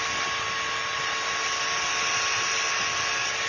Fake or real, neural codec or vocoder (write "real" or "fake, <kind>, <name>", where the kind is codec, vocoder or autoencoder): real